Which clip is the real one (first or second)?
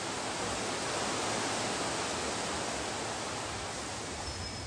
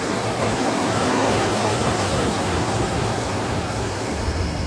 first